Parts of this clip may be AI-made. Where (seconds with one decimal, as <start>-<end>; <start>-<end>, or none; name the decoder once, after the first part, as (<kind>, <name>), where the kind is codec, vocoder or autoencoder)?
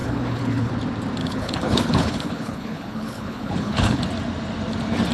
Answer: 0.0-0.7 (codec, HILCodec); 1.2-4.0